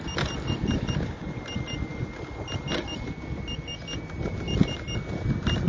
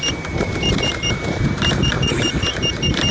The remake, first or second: second